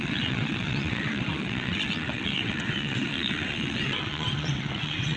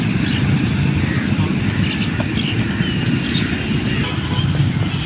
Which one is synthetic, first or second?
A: first